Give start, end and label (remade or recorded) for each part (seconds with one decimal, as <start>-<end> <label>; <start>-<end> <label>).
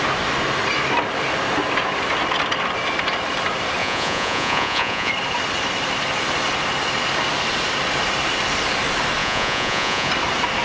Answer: 0.0-3.8 recorded; 3.8-5.1 remade; 5.1-9.2 recorded; 9.2-10.1 remade; 10.1-10.6 recorded